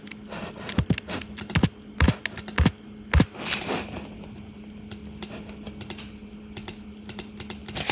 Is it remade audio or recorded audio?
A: recorded